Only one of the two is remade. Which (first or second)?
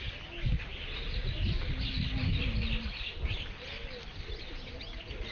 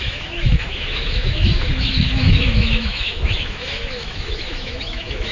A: second